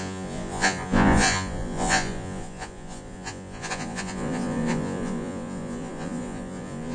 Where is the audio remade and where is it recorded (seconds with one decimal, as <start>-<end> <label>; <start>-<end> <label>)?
0.0-6.9 remade